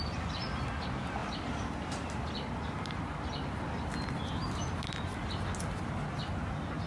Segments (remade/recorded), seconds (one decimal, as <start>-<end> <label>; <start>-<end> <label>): 0.0-6.9 recorded